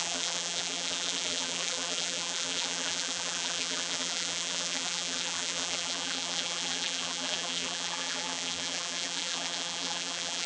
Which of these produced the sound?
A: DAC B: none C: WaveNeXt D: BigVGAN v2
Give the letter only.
D